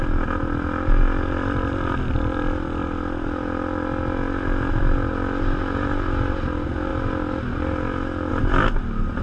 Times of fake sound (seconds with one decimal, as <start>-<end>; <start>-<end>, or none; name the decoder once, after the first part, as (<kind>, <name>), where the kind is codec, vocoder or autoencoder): none